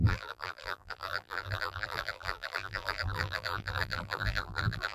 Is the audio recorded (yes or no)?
no